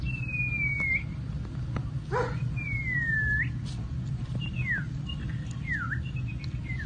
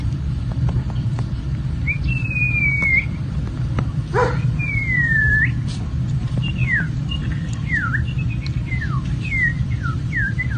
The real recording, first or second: first